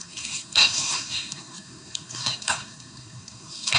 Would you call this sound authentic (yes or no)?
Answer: no